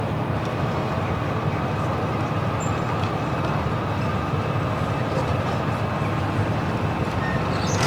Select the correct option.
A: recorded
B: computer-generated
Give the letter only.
A